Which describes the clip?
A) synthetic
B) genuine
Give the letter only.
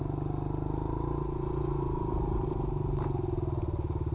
B